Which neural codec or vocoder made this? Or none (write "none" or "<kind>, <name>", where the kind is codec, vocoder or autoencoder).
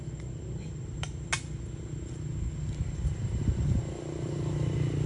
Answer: none